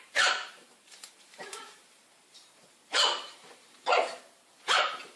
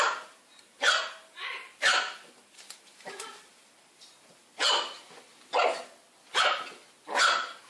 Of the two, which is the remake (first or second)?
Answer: first